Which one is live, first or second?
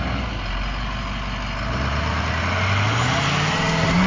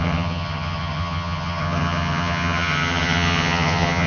first